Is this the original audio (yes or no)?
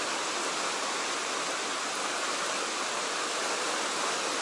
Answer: yes